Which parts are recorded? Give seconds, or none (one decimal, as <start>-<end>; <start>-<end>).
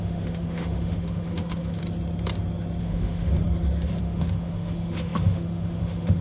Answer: 1.8-2.8; 3.3-4.0